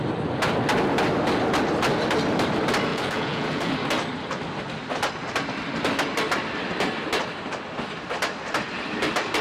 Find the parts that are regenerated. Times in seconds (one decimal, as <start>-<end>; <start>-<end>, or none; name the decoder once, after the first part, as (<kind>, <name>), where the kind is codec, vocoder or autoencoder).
2.9-3.7 (vocoder, Vocos)